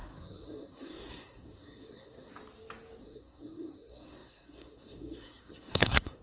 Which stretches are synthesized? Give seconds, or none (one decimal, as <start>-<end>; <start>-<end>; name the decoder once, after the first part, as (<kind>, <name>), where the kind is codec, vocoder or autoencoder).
0.0-2.3 (codec, SNAC); 3.0-6.2